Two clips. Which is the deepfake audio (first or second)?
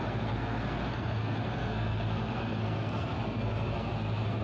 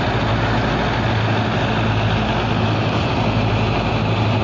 first